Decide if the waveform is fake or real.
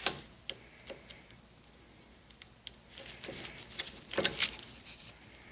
real